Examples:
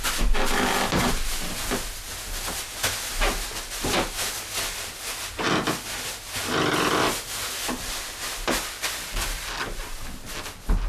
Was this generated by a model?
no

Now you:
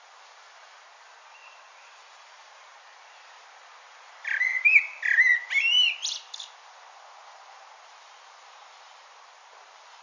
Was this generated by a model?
yes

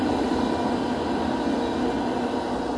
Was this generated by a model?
no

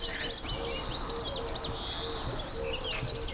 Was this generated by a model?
no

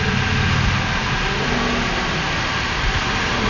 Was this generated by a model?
no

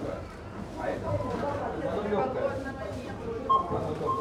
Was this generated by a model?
yes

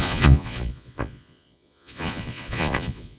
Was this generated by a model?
yes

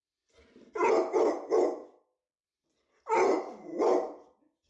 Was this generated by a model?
no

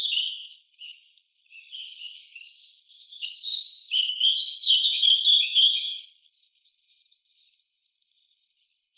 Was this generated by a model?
yes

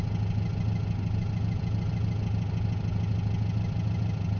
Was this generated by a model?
no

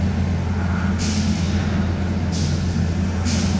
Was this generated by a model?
no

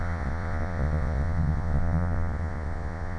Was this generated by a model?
yes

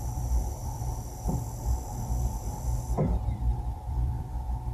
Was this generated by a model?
yes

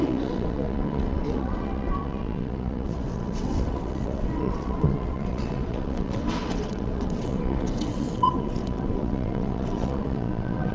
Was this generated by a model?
yes